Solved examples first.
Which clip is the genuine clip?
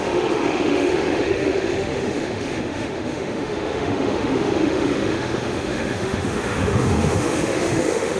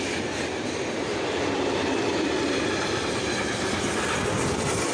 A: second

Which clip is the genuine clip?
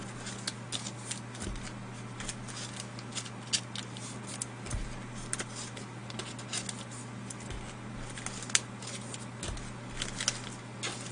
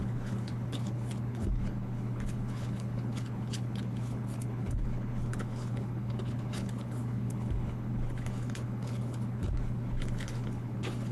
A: first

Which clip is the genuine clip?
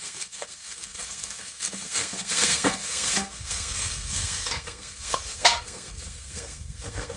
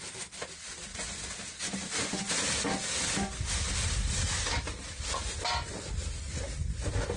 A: second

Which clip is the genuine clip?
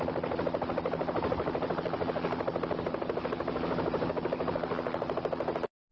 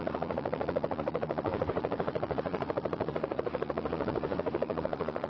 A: first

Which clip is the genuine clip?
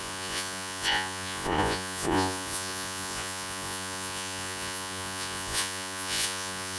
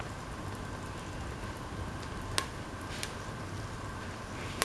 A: second